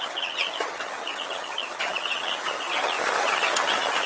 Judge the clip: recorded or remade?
remade